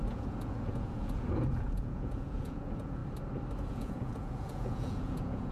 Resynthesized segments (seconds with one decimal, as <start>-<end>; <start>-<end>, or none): 0.0-3.0; 3.7-5.5